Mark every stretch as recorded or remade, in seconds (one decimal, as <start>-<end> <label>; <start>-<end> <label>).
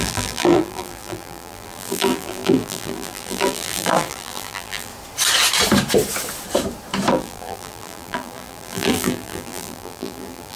0.0-4.9 remade; 4.9-7.1 recorded; 7.1-10.6 remade